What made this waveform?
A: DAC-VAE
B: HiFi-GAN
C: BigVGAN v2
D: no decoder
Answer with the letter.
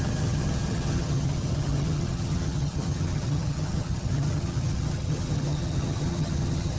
B